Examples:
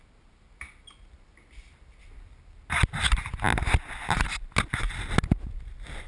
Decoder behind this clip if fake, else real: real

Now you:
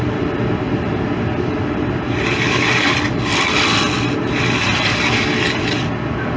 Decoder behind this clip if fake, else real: real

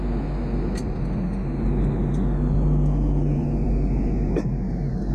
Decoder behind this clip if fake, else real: real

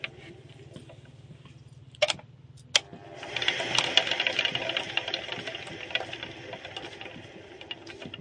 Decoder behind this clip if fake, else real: real